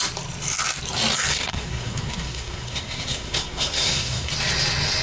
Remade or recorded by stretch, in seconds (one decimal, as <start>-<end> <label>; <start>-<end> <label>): 0.0-1.3 recorded; 1.3-4.3 remade; 4.3-5.0 recorded